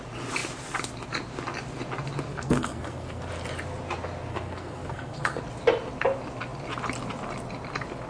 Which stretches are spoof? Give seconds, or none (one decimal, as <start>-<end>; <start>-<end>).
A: 2.3-3.3; 4.3-5.4